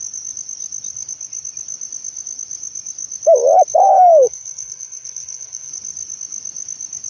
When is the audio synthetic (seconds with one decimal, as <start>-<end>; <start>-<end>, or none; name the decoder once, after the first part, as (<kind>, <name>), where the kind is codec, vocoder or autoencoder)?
3.8-5.7 (codec, SNAC)